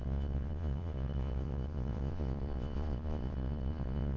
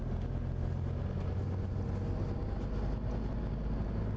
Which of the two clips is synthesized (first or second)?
first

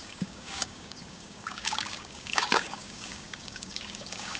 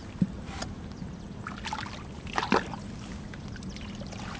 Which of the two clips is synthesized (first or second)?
first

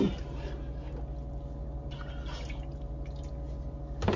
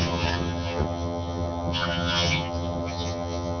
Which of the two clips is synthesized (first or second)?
second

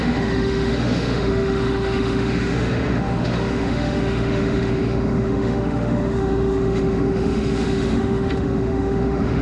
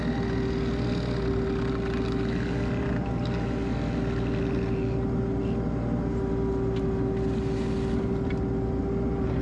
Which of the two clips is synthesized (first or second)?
first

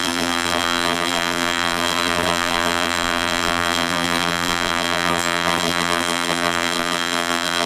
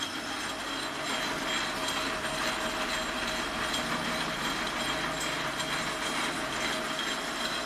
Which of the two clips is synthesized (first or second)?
first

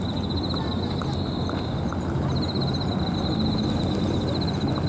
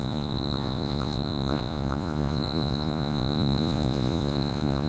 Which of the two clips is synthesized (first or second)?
second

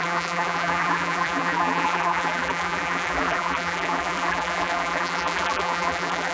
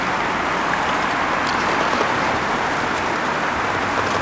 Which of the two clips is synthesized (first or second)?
first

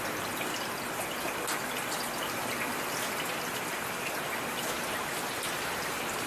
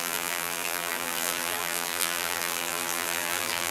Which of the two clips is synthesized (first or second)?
second